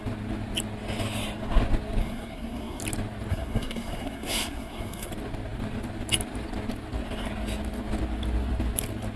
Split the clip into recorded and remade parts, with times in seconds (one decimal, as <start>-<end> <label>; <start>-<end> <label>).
0.0-2.0 recorded; 2.0-2.8 remade; 2.8-3.3 recorded; 3.3-5.1 remade; 5.1-9.2 recorded